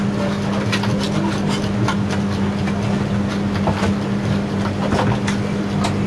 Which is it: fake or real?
real